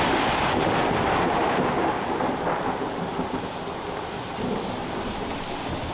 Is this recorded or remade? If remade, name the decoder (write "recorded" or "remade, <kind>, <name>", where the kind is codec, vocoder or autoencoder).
recorded